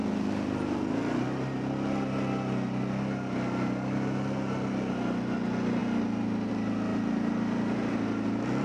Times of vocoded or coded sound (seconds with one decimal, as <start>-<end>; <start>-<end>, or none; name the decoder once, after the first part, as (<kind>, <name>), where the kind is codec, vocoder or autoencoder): 6.9-7.9 (vocoder, BigVGAN v2)